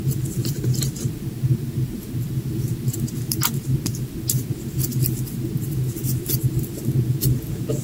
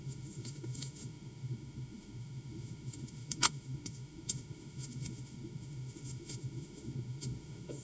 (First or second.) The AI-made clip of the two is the second